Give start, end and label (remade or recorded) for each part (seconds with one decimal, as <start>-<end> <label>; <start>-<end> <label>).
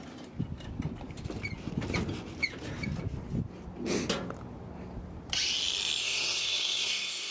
0.0-6.0 recorded; 6.0-7.3 remade